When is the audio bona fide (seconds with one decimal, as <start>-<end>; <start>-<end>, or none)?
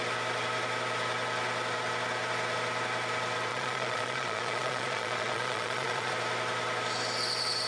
0.0-3.5; 6.1-7.7